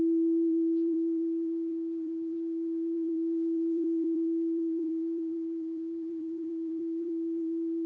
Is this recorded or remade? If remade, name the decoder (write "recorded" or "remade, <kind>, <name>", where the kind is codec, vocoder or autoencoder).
remade, vocoder, BigVGAN v2